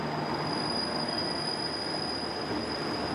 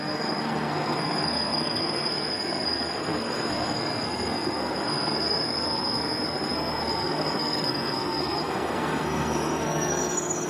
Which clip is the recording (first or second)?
first